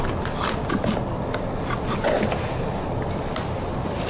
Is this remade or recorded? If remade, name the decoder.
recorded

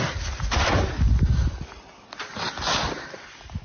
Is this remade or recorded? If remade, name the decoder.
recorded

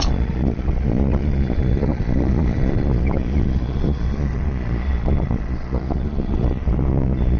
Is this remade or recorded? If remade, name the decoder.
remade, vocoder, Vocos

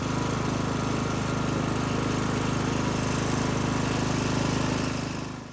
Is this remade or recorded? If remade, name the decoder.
recorded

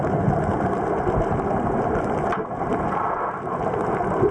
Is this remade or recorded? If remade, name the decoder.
recorded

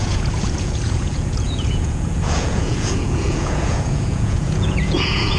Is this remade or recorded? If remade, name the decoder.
remade, vocoder, Vocos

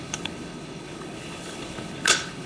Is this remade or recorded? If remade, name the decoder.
remade, codec, HILCodec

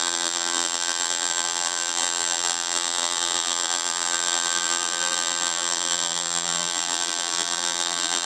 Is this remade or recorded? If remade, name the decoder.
remade, vocoder, BigVGAN v2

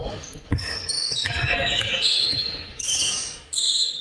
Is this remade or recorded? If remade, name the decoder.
remade, codec, DAC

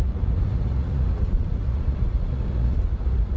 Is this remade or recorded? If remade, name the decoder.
remade, vocoder, Vocos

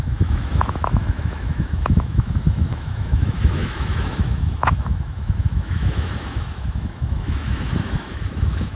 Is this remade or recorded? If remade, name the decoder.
remade, autoencoder, DAC-VAE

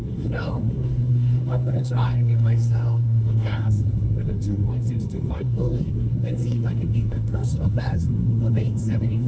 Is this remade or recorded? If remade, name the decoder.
remade, codec, SNAC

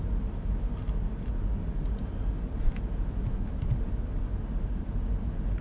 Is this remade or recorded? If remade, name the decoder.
recorded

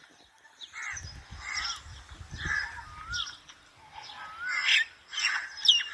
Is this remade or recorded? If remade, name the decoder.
recorded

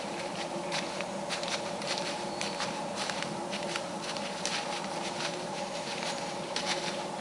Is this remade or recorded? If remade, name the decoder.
remade, vocoder, BigVGAN v2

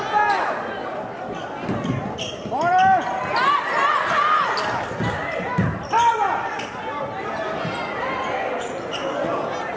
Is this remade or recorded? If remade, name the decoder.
recorded